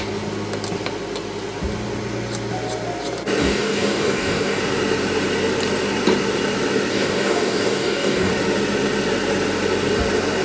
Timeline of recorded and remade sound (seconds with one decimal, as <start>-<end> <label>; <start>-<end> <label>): 0.0-3.4 recorded; 3.4-4.6 remade; 4.6-6.9 recorded; 6.9-8.3 remade; 8.3-10.4 recorded